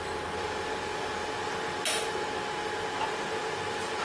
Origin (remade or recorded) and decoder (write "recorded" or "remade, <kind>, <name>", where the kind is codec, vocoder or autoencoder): recorded